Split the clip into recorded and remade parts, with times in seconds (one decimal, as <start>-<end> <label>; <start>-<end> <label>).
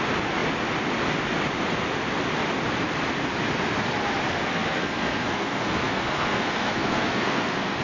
0.0-4.2 recorded; 4.2-7.8 remade